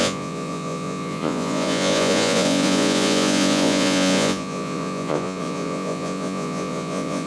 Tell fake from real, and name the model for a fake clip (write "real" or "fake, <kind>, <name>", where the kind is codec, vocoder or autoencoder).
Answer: fake, vocoder, Vocos